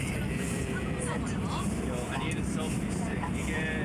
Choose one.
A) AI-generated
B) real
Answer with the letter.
A